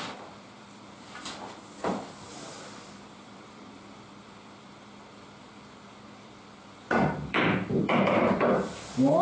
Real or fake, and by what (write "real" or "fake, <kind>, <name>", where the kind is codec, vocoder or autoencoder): fake, vocoder, BigVGAN v2